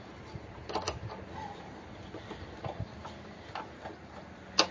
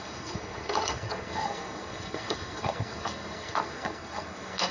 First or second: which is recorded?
first